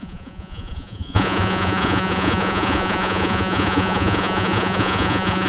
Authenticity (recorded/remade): remade